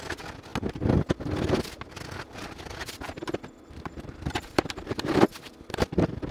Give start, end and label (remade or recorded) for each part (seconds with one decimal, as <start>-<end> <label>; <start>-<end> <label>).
0.0-0.5 remade; 0.5-1.9 recorded; 1.9-6.3 remade